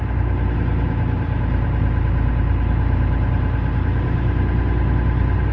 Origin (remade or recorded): recorded